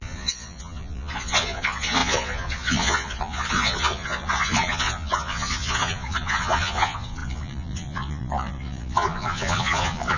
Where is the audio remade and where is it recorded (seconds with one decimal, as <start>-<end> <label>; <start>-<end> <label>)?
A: 0.0-10.2 remade